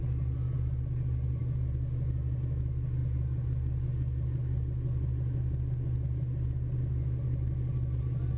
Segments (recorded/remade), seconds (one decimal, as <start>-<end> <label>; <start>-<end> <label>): 0.0-8.4 recorded